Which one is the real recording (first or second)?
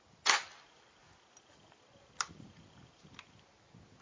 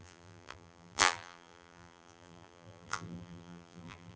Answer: first